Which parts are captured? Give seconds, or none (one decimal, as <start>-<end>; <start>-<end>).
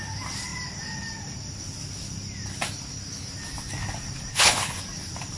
0.0-4.3; 4.8-5.4